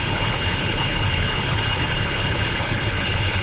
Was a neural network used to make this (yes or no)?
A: yes